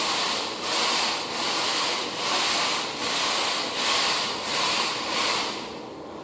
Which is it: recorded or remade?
recorded